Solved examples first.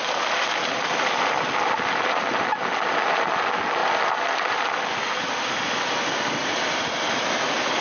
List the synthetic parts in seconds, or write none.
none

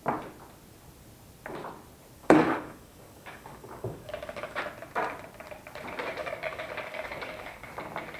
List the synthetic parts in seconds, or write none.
2.2-4.6 (codec, DAC); 6.2-7.7

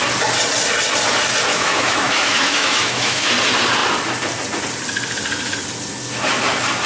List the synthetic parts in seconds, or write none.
1.5-3.3 (autoencoder, DAC-VAE)

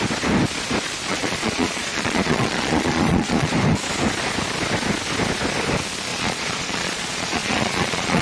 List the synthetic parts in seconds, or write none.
1.1-3.5 (vocoder, Vocos); 6.1-8.2

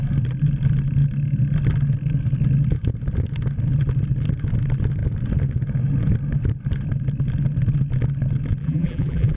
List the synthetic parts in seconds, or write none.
8.6-9.4 (vocoder, BigVGAN v2)

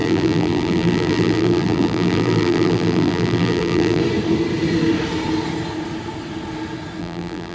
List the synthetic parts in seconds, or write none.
0.0-4.0 (vocoder, BigVGAN v2); 7.0-7.5

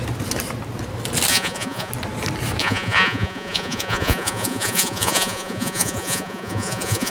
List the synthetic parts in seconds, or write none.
1.3-1.9 (vocoder, Vocos); 2.6-7.1